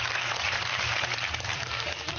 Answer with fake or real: fake